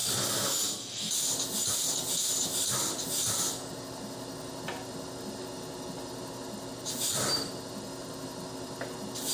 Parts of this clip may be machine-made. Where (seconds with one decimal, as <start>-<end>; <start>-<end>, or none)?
none

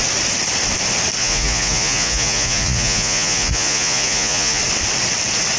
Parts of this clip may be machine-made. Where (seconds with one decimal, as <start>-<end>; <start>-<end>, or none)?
1.2-4.6

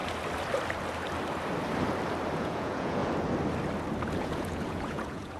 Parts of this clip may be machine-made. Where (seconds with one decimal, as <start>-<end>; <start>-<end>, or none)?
2.4-3.0; 4.2-5.4

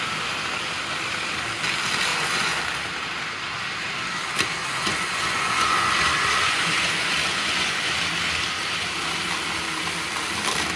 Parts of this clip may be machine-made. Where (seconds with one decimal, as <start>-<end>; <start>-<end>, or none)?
2.1-2.6; 4.6-8.0

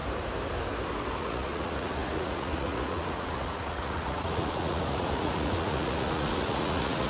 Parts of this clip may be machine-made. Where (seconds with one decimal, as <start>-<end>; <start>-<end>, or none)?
1.2-7.1